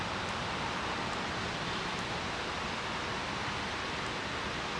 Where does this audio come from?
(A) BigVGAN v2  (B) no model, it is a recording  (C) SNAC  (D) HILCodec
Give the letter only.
B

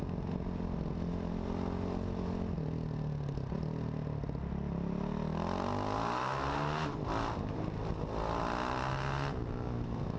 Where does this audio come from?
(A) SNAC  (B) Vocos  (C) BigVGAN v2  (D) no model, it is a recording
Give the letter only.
D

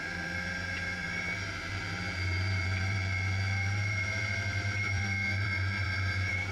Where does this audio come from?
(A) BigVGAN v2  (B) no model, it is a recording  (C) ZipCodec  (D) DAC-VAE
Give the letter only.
A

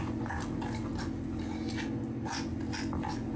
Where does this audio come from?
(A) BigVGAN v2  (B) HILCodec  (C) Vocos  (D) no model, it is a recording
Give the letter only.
D